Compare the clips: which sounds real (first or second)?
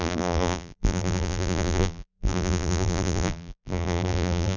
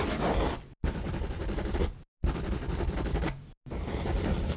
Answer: second